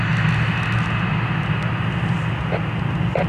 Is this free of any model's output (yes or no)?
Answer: yes